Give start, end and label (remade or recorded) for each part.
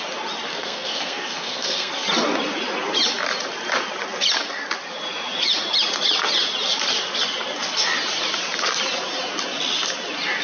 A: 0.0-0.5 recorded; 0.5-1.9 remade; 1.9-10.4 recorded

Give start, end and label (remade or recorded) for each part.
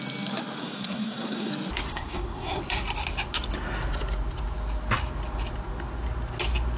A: 0.0-0.6 recorded; 0.6-1.5 remade; 1.5-1.9 recorded; 1.9-2.6 remade; 2.6-6.8 recorded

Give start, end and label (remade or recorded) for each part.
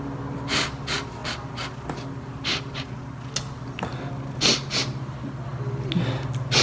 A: 0.0-6.6 recorded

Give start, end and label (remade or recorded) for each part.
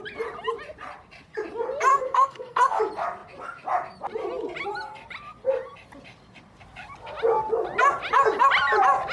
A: 0.0-1.9 recorded; 1.9-2.8 remade; 2.8-9.1 recorded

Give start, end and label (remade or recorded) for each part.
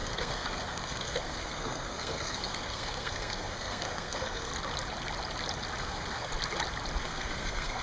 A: 0.0-4.5 remade; 4.5-5.8 recorded; 5.8-6.3 remade; 6.3-7.0 recorded; 7.0-7.8 remade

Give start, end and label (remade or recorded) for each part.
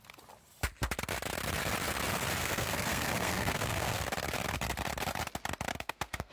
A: 0.0-2.4 recorded; 2.4-4.0 remade; 4.0-5.7 recorded; 5.7-6.3 remade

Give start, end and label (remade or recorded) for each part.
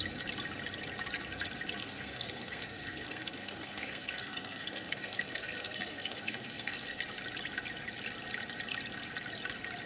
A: 0.0-1.8 recorded; 1.8-7.0 remade; 7.0-9.9 recorded